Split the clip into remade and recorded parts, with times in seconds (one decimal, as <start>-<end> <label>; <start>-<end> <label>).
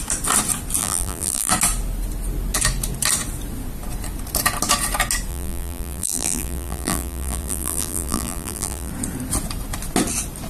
0.0-0.8 recorded; 0.8-1.5 remade; 1.5-5.3 recorded; 5.3-8.9 remade; 8.9-10.5 recorded